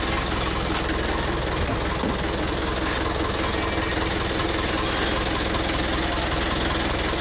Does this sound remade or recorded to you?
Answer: recorded